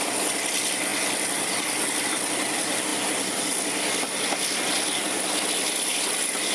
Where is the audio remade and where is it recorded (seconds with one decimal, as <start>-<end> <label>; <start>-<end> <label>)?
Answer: 0.0-6.5 recorded